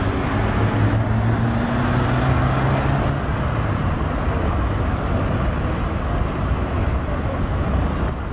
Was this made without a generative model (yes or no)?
yes